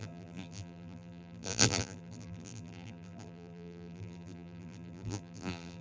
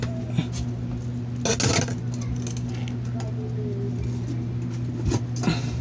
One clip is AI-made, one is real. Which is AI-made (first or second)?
first